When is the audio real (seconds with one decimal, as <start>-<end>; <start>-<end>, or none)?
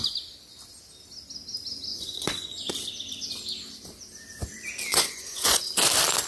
0.0-1.9; 2.7-4.9; 5.6-6.3